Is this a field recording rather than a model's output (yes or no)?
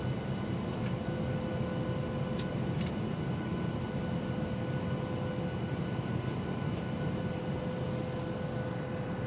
yes